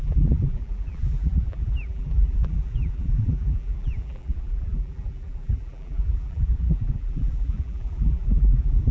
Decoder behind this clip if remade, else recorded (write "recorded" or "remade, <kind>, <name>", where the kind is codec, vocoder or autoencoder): remade, vocoder, BigVGAN v2